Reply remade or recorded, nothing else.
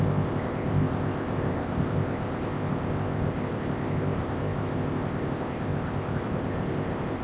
remade